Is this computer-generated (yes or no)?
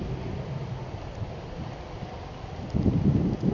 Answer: no